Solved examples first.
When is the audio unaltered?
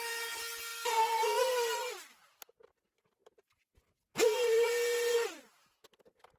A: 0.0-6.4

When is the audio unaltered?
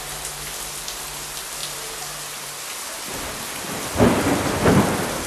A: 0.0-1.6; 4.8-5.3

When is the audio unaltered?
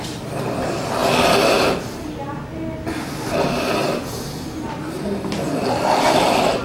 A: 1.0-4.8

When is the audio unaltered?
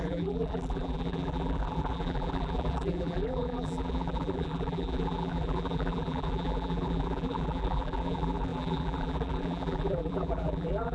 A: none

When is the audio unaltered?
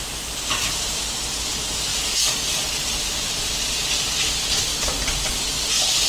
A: 0.0-6.1